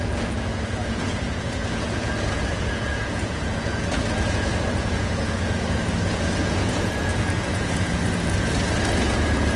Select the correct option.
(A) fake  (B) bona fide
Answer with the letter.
A